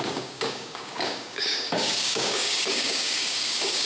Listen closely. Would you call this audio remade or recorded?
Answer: remade